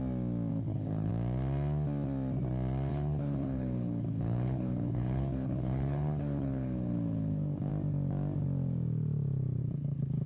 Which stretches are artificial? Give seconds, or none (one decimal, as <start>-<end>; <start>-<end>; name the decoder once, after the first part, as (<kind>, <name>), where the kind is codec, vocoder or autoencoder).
0.5-1.1 (codec, HILCodec); 2.9-7.7; 9.6-10.3